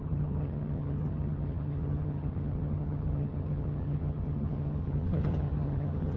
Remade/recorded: remade